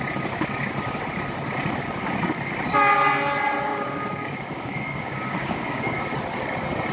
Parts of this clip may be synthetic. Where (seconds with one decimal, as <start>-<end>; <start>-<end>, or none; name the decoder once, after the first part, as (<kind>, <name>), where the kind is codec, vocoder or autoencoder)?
3.7-6.0 (codec, DAC)